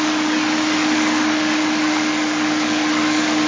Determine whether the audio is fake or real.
fake